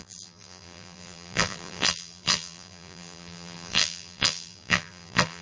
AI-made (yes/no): yes